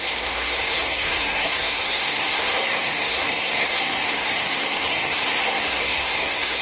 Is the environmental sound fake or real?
fake